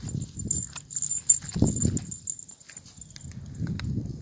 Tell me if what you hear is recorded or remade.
recorded